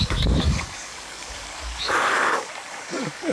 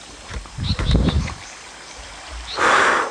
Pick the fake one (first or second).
first